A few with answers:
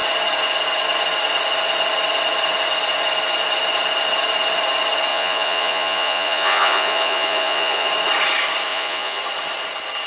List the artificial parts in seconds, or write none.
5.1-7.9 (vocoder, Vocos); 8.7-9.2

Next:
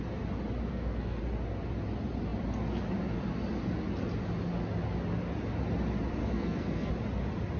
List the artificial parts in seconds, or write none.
0.7-1.2 (codec, SNAC); 6.2-6.9